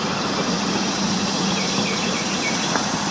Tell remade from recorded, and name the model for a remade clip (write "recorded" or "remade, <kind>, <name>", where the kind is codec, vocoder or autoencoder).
remade, vocoder, Vocos